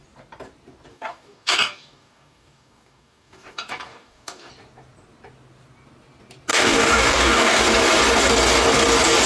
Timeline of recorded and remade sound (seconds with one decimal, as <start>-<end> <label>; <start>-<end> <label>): 0.0-0.9 recorded; 0.9-4.5 remade; 4.5-6.5 recorded; 6.5-7.6 remade; 7.6-9.3 recorded